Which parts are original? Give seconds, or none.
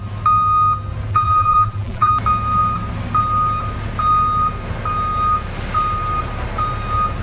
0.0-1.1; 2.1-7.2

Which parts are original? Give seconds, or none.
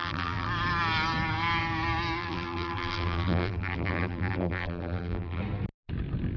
0.5-2.2; 5.4-6.4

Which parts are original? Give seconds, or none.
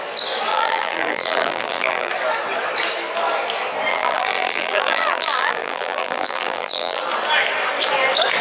0.0-0.5; 2.1-3.9; 7.0-8.4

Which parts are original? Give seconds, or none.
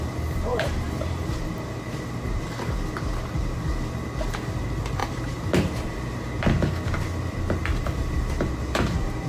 0.0-0.5; 2.4-5.0; 6.4-7.6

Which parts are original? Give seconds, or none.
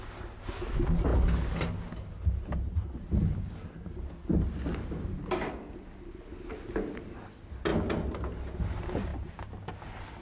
0.0-10.2